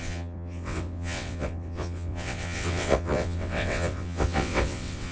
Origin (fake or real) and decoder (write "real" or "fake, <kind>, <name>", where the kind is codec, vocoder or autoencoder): fake, vocoder, WaveNeXt